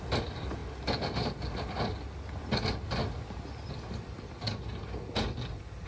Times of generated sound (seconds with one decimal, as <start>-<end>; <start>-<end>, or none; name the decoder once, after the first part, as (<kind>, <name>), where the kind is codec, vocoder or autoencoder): none